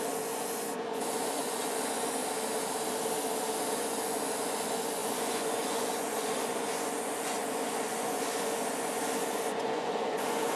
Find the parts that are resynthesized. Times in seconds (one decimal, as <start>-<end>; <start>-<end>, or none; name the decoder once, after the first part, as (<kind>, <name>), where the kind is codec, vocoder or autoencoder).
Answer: 0.0-2.2 (vocoder, Vocos); 3.7-10.6